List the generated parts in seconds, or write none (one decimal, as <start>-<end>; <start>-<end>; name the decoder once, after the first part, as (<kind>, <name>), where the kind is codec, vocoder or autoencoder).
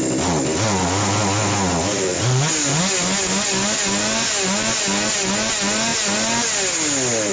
none